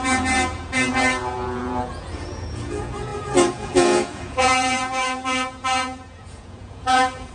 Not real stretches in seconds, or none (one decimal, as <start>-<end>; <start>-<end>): 0.0-7.3